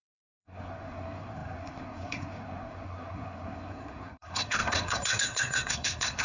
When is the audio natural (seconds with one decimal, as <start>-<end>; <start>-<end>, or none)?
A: none